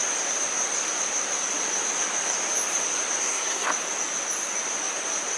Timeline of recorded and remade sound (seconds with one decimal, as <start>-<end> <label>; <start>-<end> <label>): 0.0-3.2 recorded; 3.2-3.7 remade; 3.7-5.4 recorded